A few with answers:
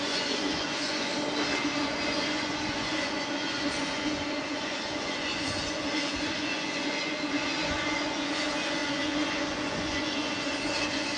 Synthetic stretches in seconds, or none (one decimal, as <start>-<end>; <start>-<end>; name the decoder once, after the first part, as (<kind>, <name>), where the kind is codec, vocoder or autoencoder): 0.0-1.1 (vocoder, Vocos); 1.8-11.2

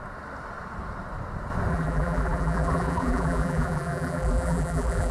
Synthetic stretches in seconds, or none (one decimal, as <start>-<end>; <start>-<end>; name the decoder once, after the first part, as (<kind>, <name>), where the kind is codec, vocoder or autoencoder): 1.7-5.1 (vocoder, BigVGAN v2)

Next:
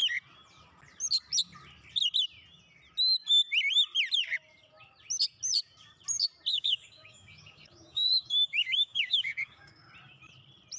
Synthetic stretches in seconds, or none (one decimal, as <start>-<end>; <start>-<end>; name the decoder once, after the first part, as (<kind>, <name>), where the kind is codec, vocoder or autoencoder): 6.5-9.9 (codec, DAC)